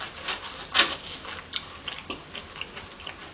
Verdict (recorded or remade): recorded